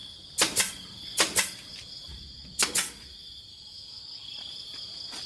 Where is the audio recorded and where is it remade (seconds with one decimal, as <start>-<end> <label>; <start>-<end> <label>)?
0.0-3.5 recorded; 3.5-4.0 remade; 4.0-5.3 recorded